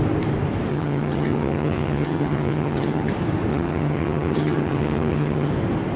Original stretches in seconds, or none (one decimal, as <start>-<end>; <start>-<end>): 0.0-0.7; 3.1-3.5; 5.5-6.0